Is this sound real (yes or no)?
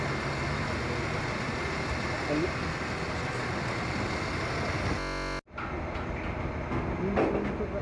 yes